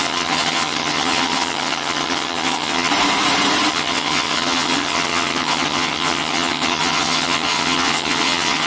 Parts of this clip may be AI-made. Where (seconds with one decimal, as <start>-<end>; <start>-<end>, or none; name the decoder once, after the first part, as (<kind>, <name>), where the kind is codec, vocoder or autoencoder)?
0.0-2.9 (vocoder, HiFi-GAN); 3.7-8.7